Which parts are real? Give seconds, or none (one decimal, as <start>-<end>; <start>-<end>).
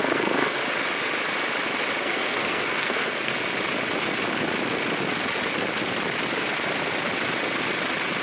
0.6-2.0; 3.3-8.2